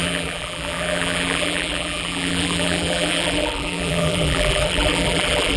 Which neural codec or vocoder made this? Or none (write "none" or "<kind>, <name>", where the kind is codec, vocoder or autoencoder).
vocoder, BigVGAN v2